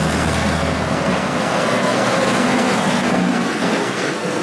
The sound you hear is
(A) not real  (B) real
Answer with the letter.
A